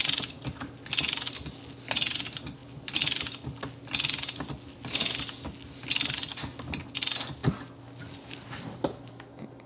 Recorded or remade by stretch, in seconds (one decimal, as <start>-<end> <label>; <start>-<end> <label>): 0.0-9.7 recorded